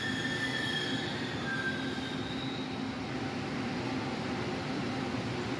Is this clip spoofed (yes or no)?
no